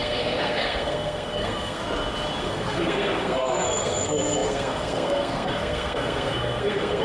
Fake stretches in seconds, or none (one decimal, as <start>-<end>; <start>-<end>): 0.0-1.8; 2.4-7.0